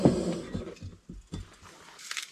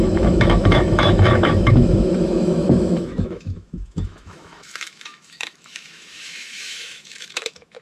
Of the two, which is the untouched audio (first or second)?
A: first